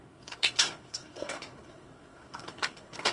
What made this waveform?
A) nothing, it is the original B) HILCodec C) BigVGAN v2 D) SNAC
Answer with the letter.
D